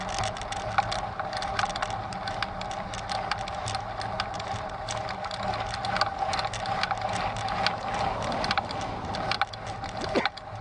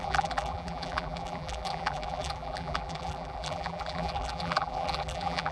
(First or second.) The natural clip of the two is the first